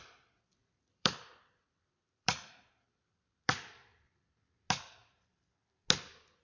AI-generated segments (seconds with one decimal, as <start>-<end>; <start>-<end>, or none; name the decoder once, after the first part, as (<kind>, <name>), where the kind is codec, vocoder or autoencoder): 0.6-4.4 (vocoder, BigVGAN v2)